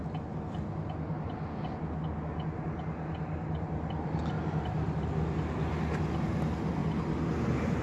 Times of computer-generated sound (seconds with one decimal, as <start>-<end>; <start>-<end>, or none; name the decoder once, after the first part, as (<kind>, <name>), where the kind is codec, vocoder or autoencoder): none